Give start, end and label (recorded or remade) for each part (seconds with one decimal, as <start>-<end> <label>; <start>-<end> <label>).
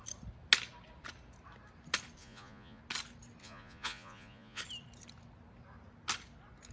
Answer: 0.0-2.2 recorded; 2.2-2.8 remade; 2.8-3.4 recorded; 3.4-4.6 remade; 4.6-6.7 recorded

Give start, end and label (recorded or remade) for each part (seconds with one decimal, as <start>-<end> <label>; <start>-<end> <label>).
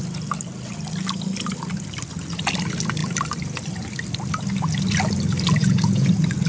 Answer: 0.0-5.6 recorded; 5.6-6.1 remade; 6.1-6.5 recorded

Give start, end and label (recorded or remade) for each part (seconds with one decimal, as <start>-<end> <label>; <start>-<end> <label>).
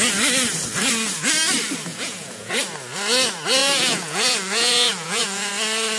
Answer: 0.0-1.9 recorded; 1.9-2.5 remade; 2.5-3.6 recorded; 3.6-5.5 remade; 5.5-6.0 recorded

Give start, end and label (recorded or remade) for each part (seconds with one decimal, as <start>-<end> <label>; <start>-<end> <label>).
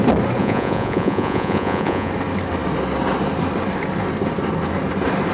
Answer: 0.0-0.4 recorded; 0.4-2.1 remade; 2.1-5.3 recorded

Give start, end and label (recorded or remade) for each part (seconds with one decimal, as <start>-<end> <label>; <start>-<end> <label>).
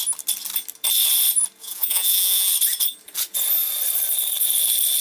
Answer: 0.0-1.6 recorded; 1.6-2.5 remade; 2.5-5.0 recorded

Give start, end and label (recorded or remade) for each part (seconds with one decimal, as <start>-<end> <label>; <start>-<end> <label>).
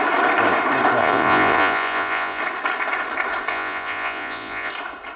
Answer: 0.0-1.0 recorded; 1.0-2.4 remade; 2.4-3.5 recorded; 3.5-4.7 remade; 4.7-5.2 recorded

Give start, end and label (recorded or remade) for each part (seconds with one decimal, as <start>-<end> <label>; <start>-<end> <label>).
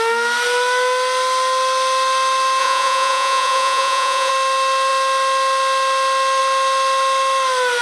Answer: 0.0-2.6 recorded; 2.6-4.3 remade; 4.3-7.8 recorded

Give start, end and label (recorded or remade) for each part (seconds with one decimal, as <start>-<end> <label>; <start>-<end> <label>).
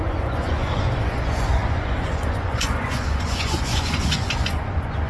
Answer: 0.0-5.1 remade